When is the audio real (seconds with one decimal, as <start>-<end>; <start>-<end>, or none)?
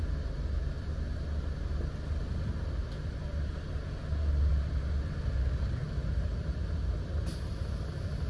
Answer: 0.0-8.3